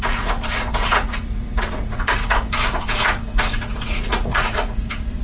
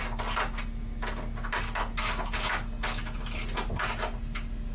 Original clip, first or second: second